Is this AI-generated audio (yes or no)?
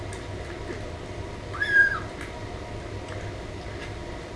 no